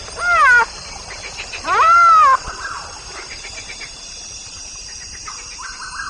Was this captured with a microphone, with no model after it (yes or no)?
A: yes